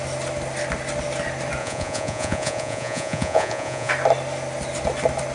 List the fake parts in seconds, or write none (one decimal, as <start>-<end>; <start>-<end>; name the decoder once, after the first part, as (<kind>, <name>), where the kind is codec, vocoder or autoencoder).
1.6-3.9 (vocoder, Vocos)